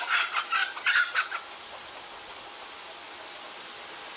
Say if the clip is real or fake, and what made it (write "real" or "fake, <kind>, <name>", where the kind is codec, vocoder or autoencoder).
real